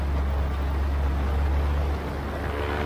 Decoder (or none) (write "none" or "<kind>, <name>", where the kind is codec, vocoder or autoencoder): none